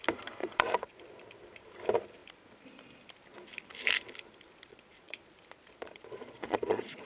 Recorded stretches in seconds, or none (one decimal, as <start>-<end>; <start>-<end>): 0.0-0.4; 1.0-4.7